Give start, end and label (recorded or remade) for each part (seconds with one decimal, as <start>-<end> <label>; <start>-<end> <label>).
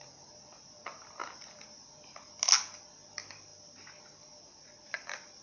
0.0-1.2 recorded; 1.2-2.4 remade; 2.4-3.5 recorded; 3.5-4.0 remade; 4.0-5.4 recorded